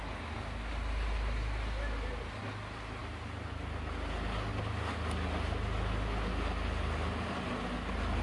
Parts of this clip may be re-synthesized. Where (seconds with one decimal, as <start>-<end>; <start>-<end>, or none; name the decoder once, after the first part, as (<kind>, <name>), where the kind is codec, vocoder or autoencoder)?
none